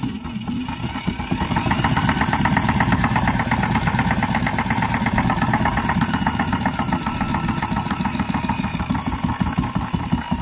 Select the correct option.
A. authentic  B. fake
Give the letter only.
A